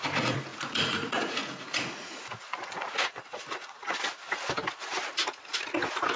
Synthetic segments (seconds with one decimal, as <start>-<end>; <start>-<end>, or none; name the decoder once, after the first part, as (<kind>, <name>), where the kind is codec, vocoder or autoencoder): 0.0-3.8 (vocoder, Vocos)